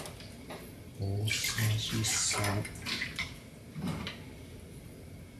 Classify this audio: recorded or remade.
recorded